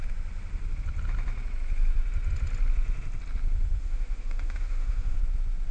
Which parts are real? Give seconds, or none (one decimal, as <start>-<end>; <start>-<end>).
0.0-3.8; 5.2-5.7